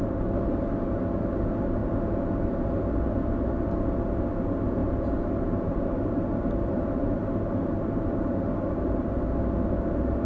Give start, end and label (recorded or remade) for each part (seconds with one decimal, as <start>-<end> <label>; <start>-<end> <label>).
0.0-4.8 recorded; 4.8-9.3 remade; 9.3-10.2 recorded